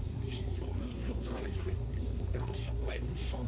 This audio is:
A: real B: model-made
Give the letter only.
B